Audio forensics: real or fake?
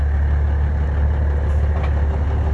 real